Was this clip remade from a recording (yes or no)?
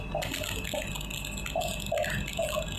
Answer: no